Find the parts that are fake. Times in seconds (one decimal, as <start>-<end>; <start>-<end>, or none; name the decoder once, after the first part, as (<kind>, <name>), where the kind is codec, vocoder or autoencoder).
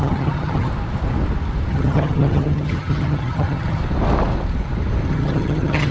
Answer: 0.0-0.7 (vocoder, HiFi-GAN); 1.7-3.8; 5.1-5.9